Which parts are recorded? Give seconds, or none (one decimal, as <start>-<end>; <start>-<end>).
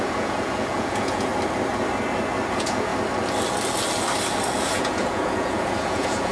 1.3-2.5; 2.9-4.6